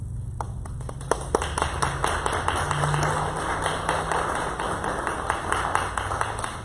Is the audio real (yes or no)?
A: no